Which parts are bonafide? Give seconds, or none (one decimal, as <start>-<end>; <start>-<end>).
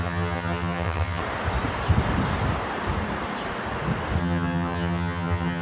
1.2-4.2